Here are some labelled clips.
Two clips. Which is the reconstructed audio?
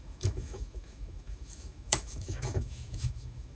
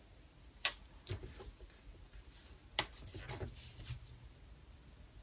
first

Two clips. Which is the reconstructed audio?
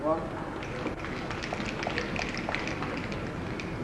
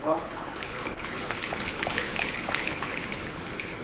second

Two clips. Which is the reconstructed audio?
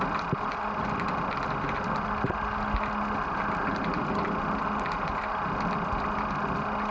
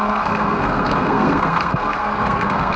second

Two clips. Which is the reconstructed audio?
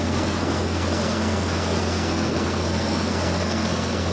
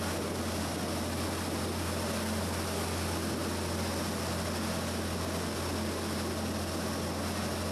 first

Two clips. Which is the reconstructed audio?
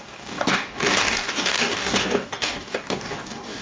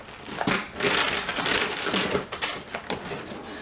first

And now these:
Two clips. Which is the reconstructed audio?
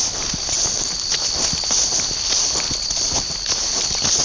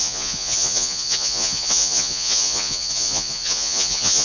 second